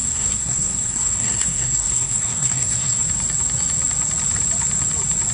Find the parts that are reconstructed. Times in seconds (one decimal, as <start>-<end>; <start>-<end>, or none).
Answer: 0.0-3.0